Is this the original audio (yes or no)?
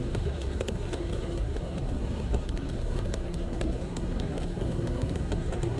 no